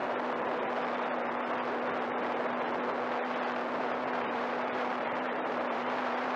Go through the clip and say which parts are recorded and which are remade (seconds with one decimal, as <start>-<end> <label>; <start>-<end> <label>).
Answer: 0.0-3.8 recorded; 3.8-6.4 remade